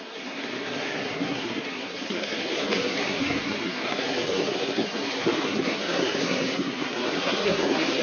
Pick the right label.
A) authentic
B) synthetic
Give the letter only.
B